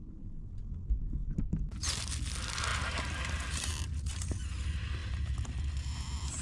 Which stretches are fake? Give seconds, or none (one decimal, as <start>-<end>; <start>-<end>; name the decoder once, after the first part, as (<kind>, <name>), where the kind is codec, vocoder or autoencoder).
none